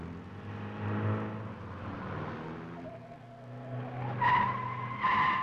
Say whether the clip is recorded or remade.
recorded